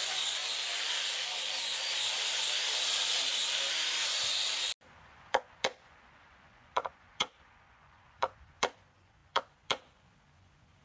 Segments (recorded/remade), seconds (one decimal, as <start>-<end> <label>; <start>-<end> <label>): 0.0-0.4 remade; 0.4-4.9 recorded; 4.9-10.8 remade